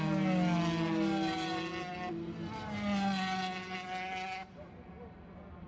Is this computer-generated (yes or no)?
no